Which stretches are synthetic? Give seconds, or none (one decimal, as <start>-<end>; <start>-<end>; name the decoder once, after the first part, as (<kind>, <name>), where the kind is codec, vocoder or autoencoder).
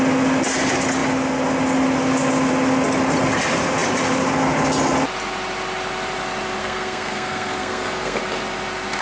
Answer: 6.6-8.2 (codec, SNAC)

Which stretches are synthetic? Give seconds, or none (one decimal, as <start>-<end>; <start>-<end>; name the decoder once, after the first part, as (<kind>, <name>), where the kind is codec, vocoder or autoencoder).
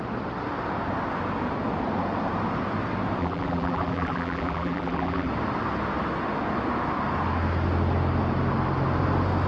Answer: 3.2-5.3 (vocoder, BigVGAN v2)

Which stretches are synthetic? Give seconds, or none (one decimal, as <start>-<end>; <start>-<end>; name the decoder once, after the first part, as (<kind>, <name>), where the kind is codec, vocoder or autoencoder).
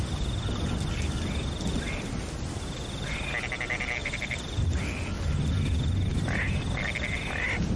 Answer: 4.0-4.6 (vocoder, BigVGAN v2)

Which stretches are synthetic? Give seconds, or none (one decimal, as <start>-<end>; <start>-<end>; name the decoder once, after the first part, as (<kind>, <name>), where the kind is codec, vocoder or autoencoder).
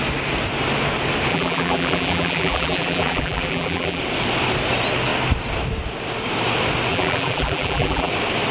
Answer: 1.3-4.0 (vocoder, BigVGAN v2); 6.9-8.1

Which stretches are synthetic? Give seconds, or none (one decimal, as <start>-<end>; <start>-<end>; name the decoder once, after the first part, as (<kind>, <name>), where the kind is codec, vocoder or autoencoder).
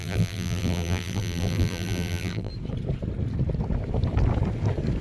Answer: 0.0-2.5 (vocoder, BigVGAN v2)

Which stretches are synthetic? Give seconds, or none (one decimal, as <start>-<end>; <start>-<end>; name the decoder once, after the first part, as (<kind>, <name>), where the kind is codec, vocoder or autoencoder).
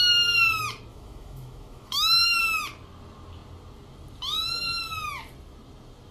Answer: 0.9-2.4 (autoencoder, DAC-VAE)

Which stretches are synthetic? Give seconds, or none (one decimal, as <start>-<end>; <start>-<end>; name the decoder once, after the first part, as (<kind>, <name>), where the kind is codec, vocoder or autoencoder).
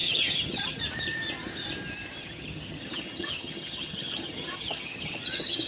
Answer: 0.0-0.8 (vocoder, HiFi-GAN); 2.2-5.7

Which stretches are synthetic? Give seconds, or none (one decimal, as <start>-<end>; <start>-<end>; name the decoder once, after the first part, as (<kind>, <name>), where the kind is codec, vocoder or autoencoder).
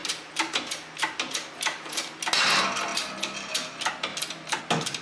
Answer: 0.0-2.2 (vocoder, BigVGAN v2); 4.1-4.6